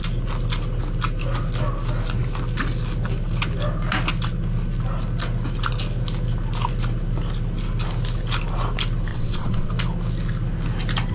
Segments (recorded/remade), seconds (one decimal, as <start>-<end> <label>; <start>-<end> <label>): 0.0-9.1 recorded; 9.1-9.7 remade; 9.7-11.1 recorded